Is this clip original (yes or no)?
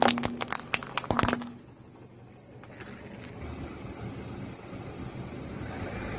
yes